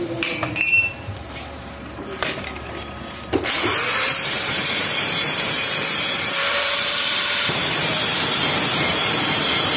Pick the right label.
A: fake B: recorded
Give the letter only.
A